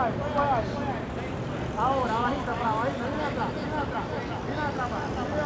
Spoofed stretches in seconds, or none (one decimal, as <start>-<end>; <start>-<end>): none